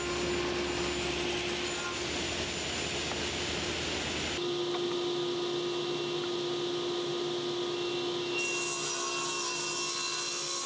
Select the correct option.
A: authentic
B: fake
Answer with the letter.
A